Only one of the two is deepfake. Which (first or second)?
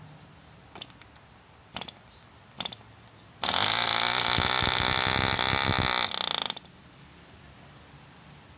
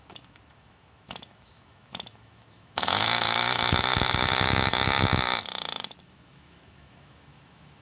second